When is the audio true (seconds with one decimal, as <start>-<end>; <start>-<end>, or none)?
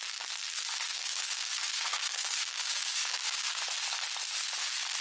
0.0-0.9; 3.6-5.0